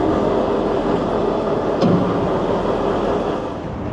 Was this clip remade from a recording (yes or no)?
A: no